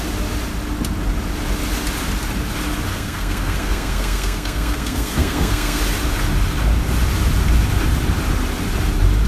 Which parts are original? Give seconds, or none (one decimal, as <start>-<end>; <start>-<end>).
0.0-2.9; 5.8-9.3